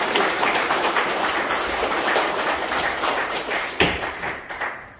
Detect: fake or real fake